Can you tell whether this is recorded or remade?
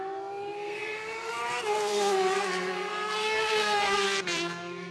remade